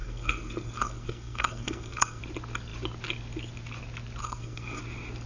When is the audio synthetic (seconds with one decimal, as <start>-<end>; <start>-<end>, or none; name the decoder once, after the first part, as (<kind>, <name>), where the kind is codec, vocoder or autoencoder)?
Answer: 0.0-2.2 (codec, SNAC); 4.2-4.8